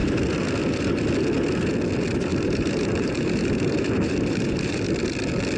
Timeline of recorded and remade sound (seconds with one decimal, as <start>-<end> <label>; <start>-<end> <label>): 0.0-2.3 recorded; 2.3-4.8 remade; 4.8-5.6 recorded